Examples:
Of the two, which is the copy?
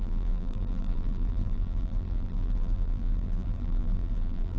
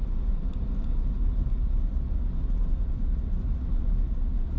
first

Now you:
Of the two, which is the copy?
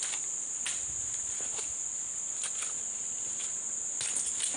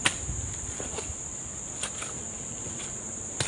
second